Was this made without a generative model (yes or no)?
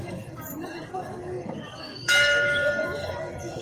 no